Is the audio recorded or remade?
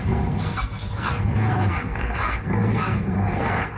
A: remade